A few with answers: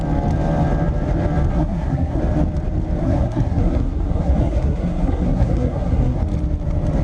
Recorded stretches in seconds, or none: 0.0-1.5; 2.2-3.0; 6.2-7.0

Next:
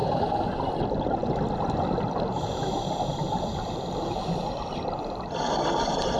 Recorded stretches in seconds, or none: 0.7-6.2

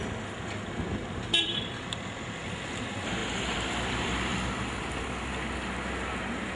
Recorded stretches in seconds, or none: 0.0-6.6